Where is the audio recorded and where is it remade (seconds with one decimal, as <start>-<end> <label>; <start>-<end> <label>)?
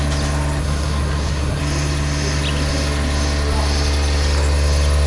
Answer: 0.0-0.6 recorded; 0.6-1.6 remade; 1.6-5.1 recorded